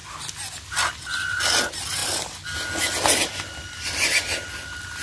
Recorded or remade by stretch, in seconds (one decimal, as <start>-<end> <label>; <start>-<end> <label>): 0.0-5.0 recorded